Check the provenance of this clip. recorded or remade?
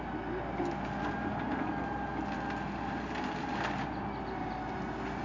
recorded